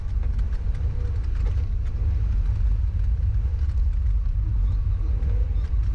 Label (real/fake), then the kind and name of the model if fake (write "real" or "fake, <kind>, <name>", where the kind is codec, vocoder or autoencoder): real